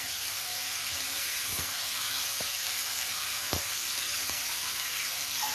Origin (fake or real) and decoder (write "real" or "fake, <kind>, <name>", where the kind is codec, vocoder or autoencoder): fake, codec, SNAC